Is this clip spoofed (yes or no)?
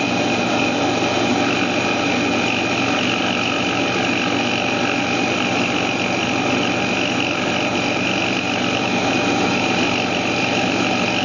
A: no